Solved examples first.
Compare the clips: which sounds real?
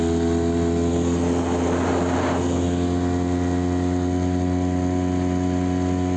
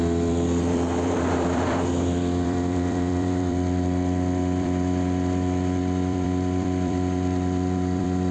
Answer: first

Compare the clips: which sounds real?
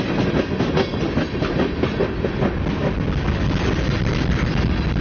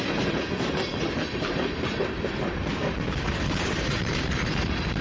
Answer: first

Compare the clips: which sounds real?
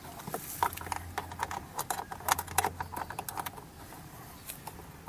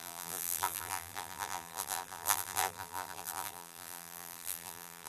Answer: first